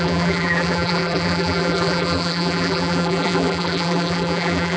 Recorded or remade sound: remade